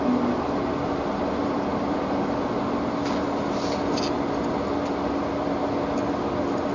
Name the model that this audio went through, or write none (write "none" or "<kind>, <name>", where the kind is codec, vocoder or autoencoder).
none